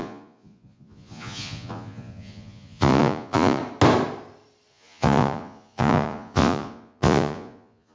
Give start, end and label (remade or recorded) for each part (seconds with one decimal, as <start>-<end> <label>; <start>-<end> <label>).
0.0-3.6 remade; 3.6-4.7 recorded; 4.7-7.9 remade